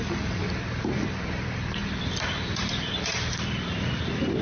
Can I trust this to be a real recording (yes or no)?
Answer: no